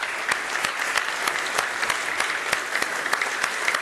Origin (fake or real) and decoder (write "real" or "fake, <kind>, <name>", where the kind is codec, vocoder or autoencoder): real